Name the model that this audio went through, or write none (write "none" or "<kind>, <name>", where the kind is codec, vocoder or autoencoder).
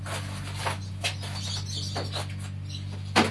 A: none